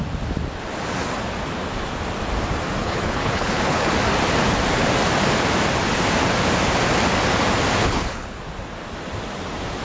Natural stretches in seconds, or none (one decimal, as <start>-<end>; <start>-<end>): 0.0-2.8; 3.9-7.8; 8.4-9.8